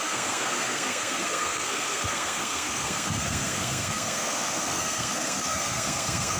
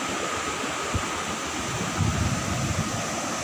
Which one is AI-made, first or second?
first